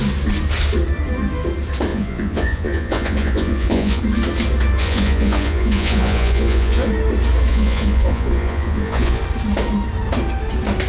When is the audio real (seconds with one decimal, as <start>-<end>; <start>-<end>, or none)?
0.0-1.9; 4.0-4.8; 6.9-7.5; 9.2-10.9